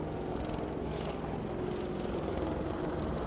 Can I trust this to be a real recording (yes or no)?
yes